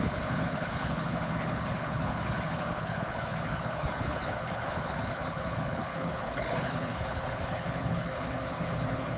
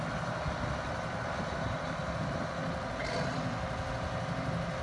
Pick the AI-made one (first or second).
first